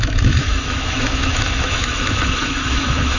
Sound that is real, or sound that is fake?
fake